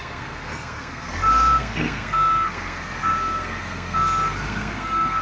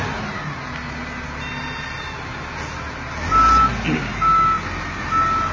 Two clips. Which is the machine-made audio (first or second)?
first